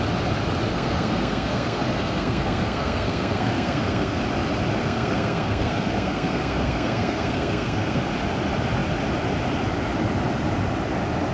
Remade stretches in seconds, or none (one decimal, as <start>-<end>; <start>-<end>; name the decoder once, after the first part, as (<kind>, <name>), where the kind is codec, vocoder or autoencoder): 0.7-4.2 (codec, SNAC); 4.8-8.1